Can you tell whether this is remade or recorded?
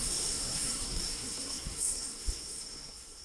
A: remade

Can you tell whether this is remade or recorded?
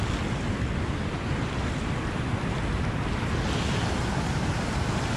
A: recorded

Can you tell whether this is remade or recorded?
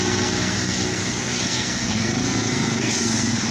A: remade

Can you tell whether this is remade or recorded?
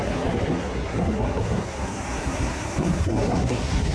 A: remade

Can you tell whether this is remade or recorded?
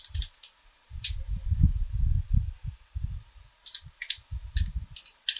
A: recorded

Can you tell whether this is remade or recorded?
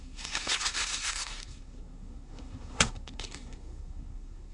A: remade